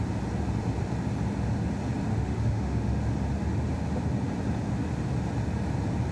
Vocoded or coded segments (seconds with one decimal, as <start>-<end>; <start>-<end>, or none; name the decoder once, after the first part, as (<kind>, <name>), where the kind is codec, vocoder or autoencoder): 2.1-3.0 (autoencoder, DAC-VAE)